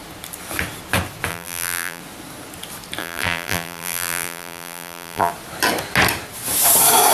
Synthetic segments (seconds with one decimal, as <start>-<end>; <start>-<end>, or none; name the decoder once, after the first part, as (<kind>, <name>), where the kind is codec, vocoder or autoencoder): 1.3-2.0 (vocoder, BigVGAN v2); 3.0-5.3